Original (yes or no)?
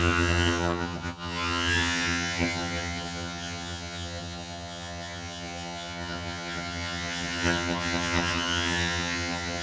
no